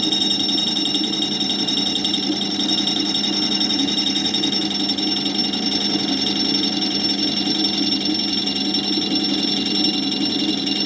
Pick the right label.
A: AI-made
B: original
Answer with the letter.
B